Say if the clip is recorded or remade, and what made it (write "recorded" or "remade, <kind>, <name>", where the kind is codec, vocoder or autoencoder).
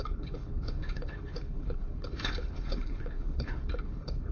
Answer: remade, codec, HILCodec